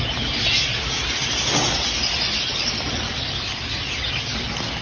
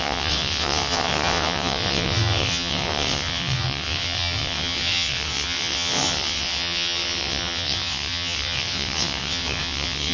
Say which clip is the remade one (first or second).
second